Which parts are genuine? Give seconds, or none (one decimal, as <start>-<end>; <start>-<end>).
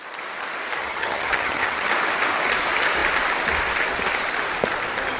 0.0-0.8; 1.9-5.2